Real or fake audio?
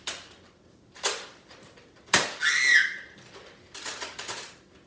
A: real